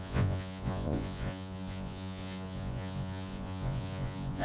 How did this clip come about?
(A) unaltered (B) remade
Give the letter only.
B